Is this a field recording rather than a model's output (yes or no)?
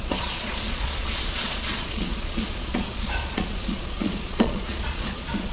no